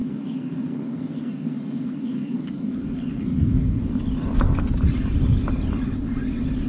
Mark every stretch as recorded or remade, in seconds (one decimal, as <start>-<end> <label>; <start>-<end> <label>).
0.0-4.0 remade; 4.0-6.7 recorded